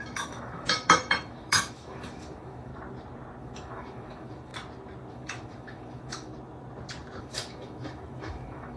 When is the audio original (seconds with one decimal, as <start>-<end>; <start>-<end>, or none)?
2.7-3.4; 4.5-5.1; 6.3-7.2